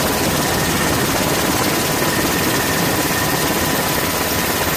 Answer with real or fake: real